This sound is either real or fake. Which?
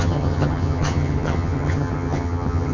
fake